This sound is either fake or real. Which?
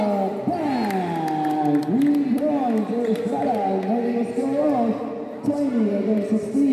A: real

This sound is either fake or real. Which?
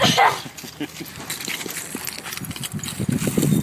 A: real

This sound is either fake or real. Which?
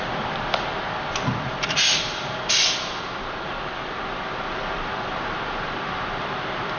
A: fake